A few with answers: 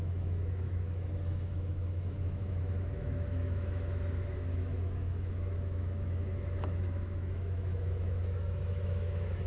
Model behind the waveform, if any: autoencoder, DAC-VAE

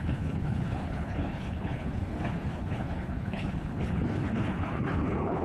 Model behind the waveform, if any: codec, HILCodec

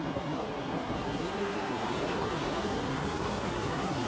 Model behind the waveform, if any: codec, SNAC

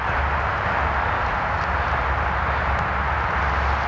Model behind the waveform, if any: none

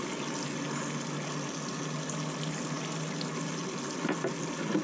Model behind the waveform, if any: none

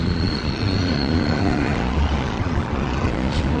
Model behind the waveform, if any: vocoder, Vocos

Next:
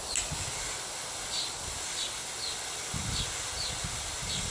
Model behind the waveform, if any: none